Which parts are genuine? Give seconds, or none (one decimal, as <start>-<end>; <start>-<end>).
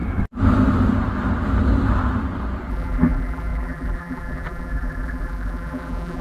0.0-2.7